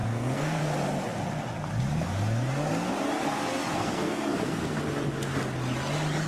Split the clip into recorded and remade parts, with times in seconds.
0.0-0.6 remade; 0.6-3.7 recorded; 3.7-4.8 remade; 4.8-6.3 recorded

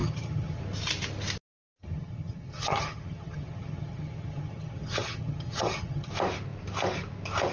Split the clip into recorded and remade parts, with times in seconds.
0.0-0.6 remade; 0.6-1.8 recorded; 1.8-6.1 remade; 6.1-7.5 recorded

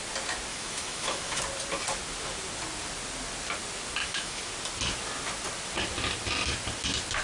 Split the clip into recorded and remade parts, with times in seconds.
0.0-0.5 recorded; 0.5-1.4 remade; 1.4-4.0 recorded; 4.0-4.5 remade; 4.5-7.2 recorded

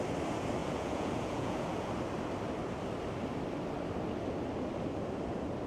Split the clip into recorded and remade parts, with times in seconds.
0.0-0.6 recorded; 0.6-1.9 remade; 1.9-5.7 recorded

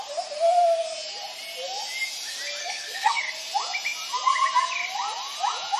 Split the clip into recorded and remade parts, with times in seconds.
0.0-2.6 recorded; 2.6-3.2 remade; 3.2-5.8 recorded

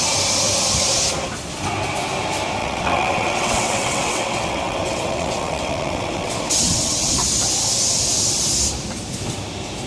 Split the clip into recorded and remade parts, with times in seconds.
0.0-2.6 recorded; 2.6-7.1 remade; 7.1-9.9 recorded

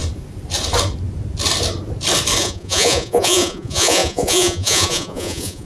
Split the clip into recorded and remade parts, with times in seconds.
0.0-2.4 recorded; 2.4-5.7 remade